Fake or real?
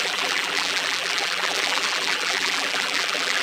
fake